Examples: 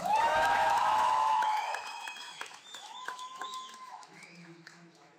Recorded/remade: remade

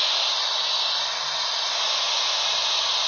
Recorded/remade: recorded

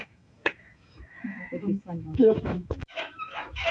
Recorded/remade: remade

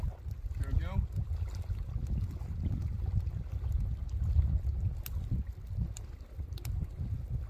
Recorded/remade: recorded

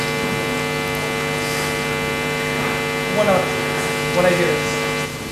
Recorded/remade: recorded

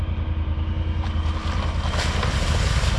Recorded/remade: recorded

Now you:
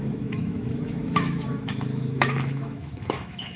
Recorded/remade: remade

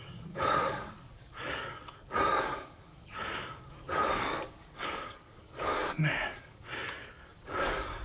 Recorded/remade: remade